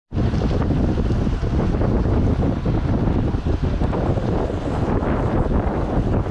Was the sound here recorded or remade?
remade